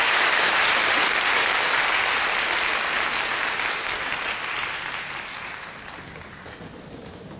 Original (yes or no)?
yes